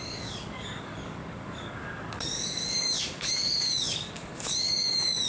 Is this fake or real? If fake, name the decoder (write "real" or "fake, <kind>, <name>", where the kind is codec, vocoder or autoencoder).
fake, codec, DAC